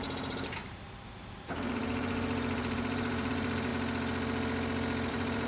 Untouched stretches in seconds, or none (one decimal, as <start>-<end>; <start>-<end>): 3.7-5.1